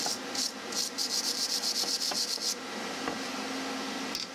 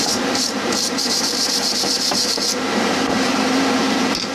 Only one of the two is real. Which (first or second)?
first